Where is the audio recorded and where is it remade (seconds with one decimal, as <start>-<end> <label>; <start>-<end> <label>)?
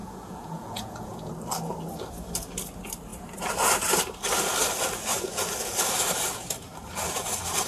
0.0-1.3 remade; 1.3-7.7 recorded